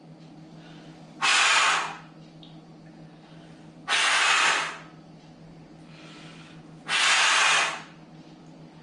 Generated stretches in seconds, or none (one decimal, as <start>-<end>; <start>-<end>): none